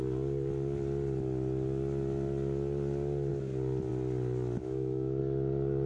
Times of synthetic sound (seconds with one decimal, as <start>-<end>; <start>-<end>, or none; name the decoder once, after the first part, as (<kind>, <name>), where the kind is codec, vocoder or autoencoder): 4.6-5.2 (autoencoder, DAC-VAE)